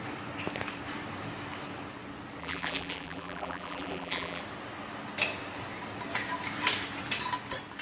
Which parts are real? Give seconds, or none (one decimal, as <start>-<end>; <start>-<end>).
0.0-2.4; 4.4-7.8